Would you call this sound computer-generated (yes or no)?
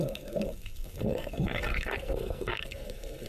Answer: yes